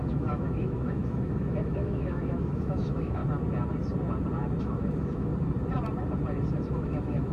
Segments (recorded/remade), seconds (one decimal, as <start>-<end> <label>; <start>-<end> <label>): 0.0-3.2 remade; 3.2-4.6 recorded; 4.6-5.3 remade; 5.3-6.5 recorded; 6.5-7.3 remade